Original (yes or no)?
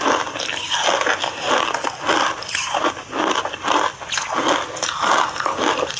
yes